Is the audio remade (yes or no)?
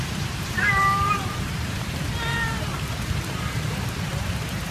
yes